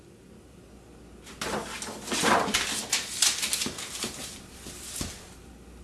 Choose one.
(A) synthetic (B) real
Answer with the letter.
B